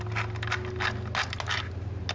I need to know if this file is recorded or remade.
recorded